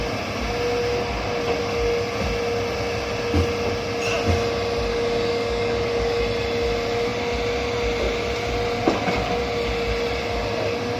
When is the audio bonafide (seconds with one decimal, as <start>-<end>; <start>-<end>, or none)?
0.0-4.9; 6.2-11.0